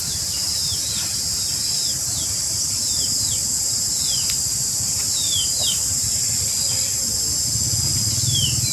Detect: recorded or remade recorded